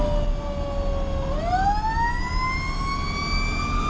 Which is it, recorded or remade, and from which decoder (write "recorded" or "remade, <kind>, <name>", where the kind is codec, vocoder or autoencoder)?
recorded